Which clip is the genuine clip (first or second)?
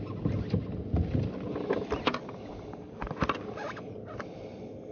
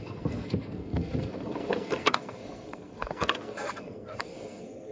first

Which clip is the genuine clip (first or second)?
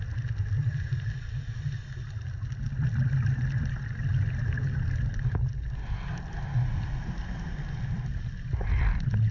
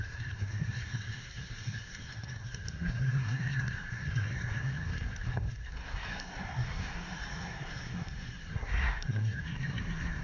first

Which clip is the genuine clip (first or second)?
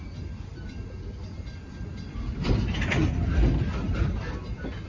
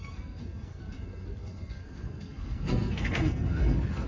first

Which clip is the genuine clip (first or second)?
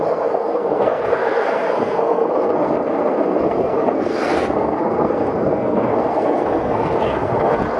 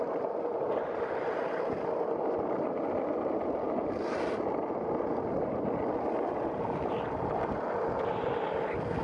second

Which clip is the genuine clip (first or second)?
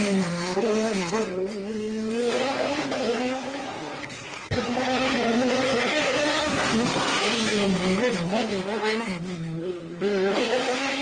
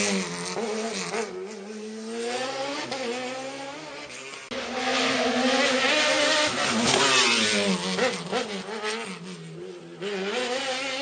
second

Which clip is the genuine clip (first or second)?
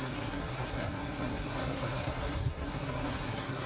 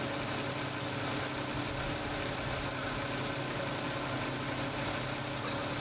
second